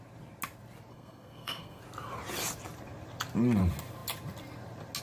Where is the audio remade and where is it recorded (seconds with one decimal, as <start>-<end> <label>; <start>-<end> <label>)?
0.0-0.9 recorded; 0.9-1.8 remade; 1.8-5.0 recorded

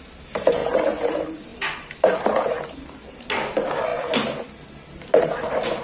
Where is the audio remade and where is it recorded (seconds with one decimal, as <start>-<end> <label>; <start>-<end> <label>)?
0.0-5.8 recorded